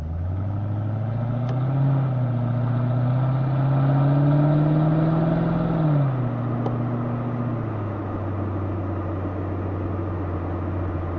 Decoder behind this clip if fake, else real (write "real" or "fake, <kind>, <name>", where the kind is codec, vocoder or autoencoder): real